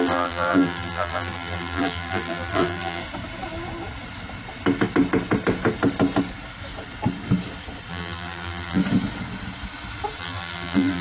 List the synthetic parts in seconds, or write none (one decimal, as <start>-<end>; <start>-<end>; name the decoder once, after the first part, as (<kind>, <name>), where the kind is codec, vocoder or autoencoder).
0.0-3.0 (vocoder, BigVGAN v2); 7.9-8.8; 10.2-11.0